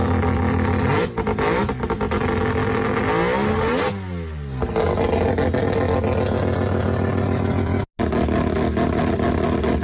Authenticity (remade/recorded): recorded